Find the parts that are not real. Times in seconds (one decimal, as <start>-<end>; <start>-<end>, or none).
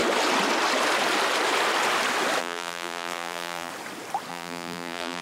2.4-3.7; 4.3-5.2